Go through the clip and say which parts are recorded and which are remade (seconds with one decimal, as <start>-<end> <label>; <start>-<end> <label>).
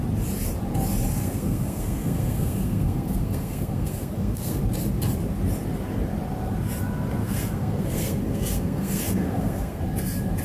0.0-1.1 recorded; 1.1-4.6 remade; 4.6-7.2 recorded; 7.2-9.8 remade; 9.8-10.4 recorded